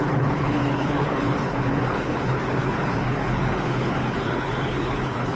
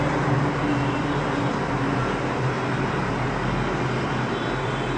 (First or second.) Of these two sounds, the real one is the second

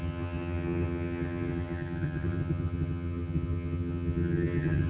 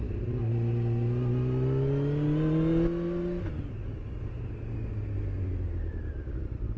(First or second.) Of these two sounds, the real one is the second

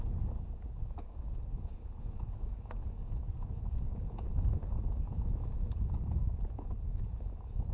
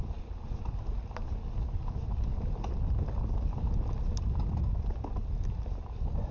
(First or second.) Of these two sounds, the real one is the second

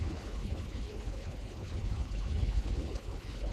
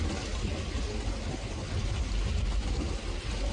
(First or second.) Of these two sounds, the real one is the second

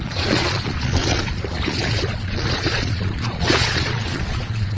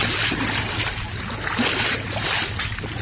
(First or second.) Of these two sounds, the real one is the second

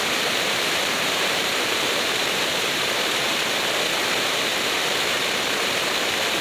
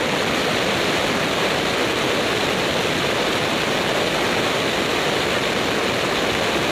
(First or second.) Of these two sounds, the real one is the second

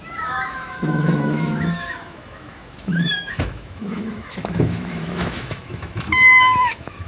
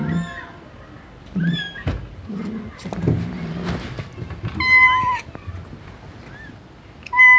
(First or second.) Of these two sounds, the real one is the second